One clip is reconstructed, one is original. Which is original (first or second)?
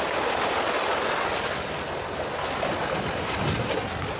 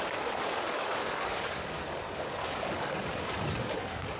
first